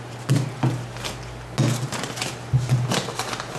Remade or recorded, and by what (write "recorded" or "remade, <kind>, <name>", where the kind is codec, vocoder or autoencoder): recorded